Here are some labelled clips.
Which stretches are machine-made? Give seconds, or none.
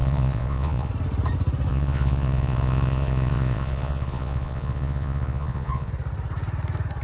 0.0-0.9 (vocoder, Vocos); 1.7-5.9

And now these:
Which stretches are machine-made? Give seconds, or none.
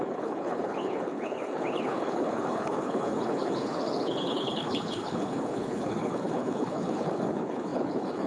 0.0-8.3 (codec, HILCodec)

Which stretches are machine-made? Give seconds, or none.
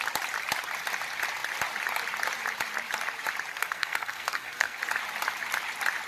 3.5-4.8 (codec, SNAC)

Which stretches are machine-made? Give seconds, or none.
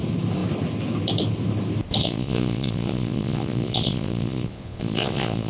2.0-5.5 (vocoder, Vocos)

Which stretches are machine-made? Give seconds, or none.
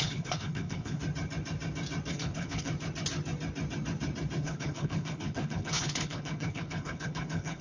0.0-1.0 (codec, HILCodec); 2.1-2.7; 4.4-7.6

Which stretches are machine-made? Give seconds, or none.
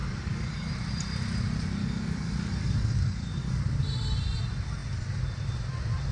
0.0-0.7 (codec, DAC); 1.8-3.6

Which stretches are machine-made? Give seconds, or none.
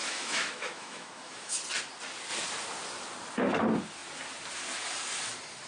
0.0-1.6 (autoencoder, DAC-VAE)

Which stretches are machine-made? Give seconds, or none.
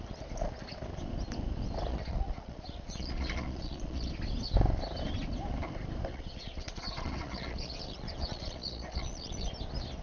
1.9-4.1 (vocoder, Vocos); 6.1-9.5